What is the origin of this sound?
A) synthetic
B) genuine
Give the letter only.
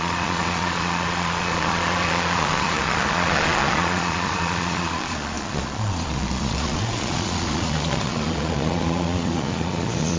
A